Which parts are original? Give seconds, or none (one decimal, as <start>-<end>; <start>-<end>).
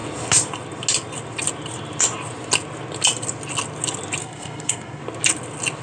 0.0-4.2; 5.0-5.8